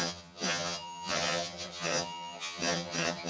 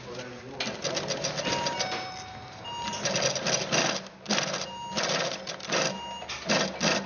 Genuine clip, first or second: second